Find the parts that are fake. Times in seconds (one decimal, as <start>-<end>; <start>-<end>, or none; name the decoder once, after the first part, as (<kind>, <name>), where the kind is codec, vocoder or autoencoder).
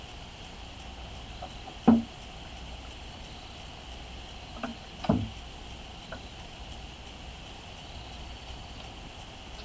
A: none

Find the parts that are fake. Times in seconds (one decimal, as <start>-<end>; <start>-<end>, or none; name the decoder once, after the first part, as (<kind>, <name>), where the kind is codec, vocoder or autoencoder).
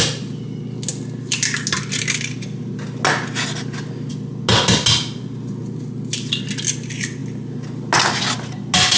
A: none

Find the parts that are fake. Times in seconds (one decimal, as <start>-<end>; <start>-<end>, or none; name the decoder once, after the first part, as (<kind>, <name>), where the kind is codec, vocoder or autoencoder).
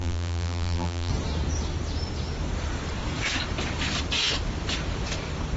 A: 0.0-1.1 (vocoder, BigVGAN v2)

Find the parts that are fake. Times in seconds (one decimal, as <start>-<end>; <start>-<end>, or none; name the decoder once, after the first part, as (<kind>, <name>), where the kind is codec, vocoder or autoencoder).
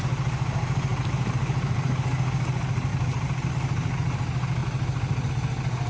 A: 0.9-2.0 (vocoder, BigVGAN v2); 2.9-3.5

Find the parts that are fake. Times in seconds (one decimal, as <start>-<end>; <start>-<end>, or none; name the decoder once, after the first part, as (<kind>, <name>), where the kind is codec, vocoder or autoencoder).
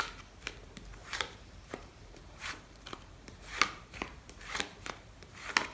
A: 1.0-4.2 (vocoder, BigVGAN v2)